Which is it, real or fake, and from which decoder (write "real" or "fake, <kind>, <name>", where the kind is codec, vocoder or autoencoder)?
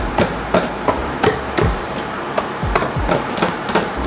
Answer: real